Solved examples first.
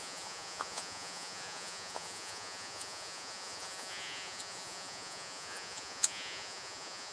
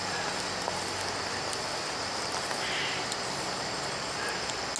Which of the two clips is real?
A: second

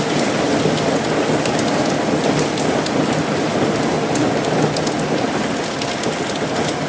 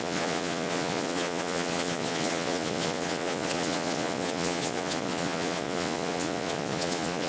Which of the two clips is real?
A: first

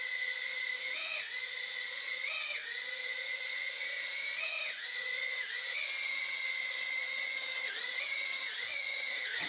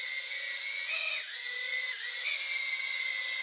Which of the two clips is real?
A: second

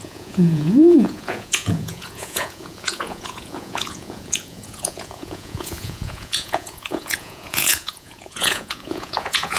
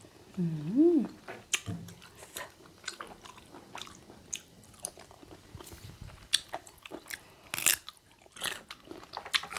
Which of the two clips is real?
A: second